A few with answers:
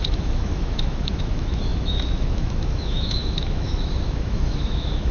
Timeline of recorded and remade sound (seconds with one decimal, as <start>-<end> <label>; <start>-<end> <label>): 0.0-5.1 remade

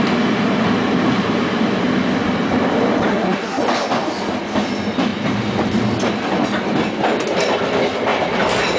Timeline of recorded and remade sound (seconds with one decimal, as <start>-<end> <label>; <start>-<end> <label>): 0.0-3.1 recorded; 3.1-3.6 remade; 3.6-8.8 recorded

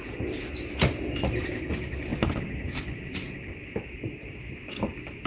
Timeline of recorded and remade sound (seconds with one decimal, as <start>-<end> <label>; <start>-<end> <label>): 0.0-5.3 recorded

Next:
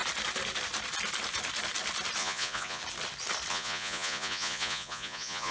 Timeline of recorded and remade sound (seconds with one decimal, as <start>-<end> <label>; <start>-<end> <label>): 0.0-2.2 recorded; 2.2-2.8 remade; 2.8-3.5 recorded; 3.5-5.5 remade

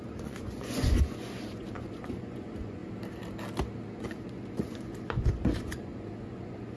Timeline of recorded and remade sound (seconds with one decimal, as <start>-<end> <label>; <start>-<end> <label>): 0.0-2.8 remade; 2.8-3.9 recorded; 3.9-6.8 remade

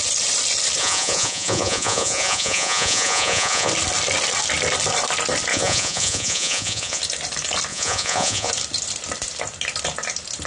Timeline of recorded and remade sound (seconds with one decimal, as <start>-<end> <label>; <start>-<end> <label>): 0.0-0.8 recorded; 0.8-3.7 remade; 3.7-5.5 recorded; 5.5-7.0 remade; 7.0-7.7 recorded; 7.7-8.5 remade; 8.5-10.5 recorded